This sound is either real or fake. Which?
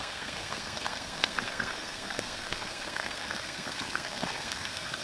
fake